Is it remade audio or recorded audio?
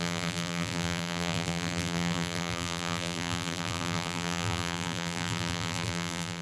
remade